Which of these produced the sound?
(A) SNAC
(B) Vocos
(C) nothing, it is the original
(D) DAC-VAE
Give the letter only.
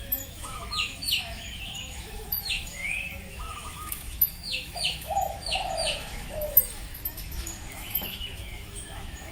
D